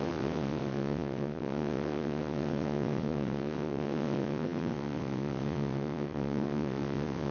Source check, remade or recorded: remade